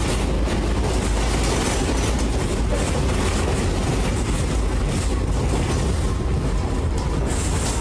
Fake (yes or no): no